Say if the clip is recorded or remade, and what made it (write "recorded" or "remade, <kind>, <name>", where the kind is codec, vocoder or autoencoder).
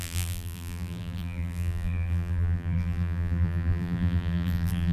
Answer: remade, vocoder, BigVGAN v2